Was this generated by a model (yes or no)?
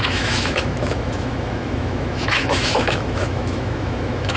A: yes